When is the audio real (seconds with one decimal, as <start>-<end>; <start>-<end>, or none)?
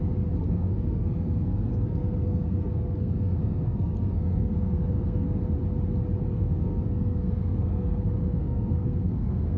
0.0-0.4; 5.4-6.3